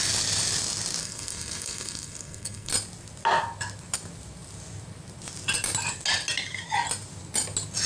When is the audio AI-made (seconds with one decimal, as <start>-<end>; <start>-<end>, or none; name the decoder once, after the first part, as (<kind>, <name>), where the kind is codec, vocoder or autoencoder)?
1.0-2.7 (codec, SNAC)